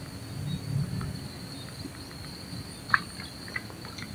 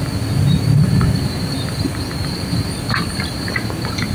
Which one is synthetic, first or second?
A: second